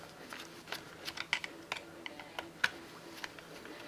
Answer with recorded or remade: recorded